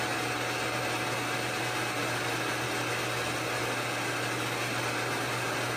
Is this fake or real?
real